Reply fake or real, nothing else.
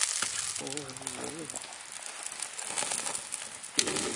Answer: real